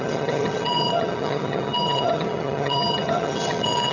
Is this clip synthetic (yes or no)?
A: yes